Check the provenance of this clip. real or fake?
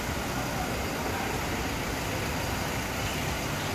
real